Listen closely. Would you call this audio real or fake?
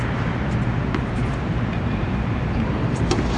fake